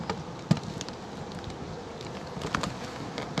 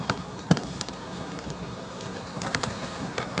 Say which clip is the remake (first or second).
second